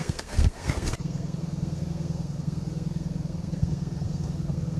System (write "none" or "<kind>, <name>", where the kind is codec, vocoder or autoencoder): codec, SNAC